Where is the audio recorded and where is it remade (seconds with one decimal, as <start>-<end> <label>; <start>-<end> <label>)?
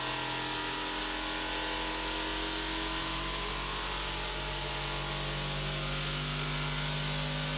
0.0-3.0 recorded; 3.0-4.7 remade; 4.7-7.6 recorded